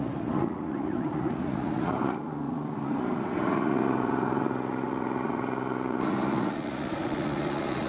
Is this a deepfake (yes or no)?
yes